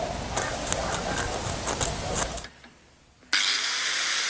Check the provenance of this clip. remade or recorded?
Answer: recorded